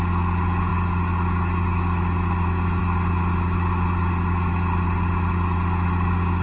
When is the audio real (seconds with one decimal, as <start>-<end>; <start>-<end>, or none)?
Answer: 0.0-6.4